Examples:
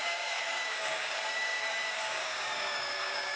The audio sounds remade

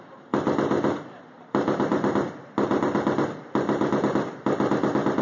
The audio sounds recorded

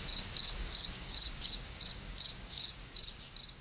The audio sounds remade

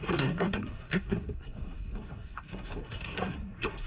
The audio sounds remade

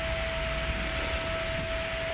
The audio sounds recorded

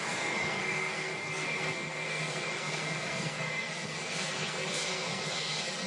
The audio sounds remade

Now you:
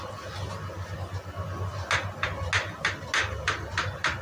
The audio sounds recorded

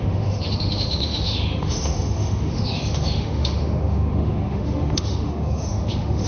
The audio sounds remade